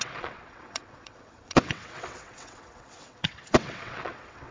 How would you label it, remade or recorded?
remade